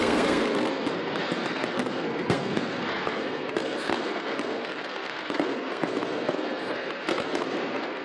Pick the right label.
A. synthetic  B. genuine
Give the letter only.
A